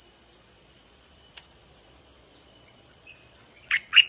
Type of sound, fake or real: fake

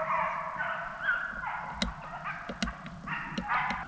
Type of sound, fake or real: real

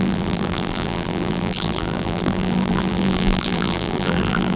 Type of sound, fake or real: fake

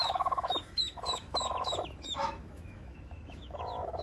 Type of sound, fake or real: fake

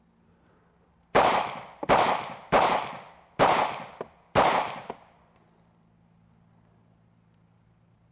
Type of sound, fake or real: real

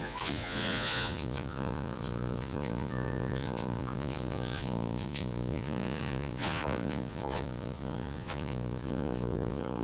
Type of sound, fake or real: fake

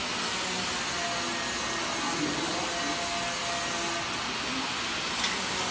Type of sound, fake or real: real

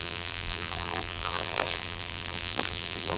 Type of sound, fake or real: fake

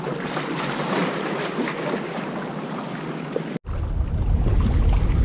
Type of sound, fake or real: real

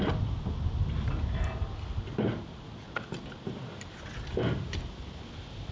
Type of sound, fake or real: real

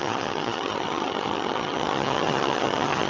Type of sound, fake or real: fake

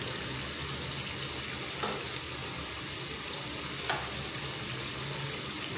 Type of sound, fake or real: real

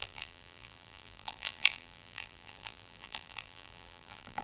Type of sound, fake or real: fake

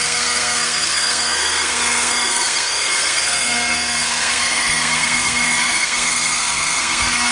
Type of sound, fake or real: fake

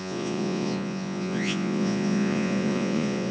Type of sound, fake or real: fake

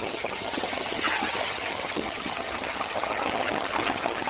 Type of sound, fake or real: fake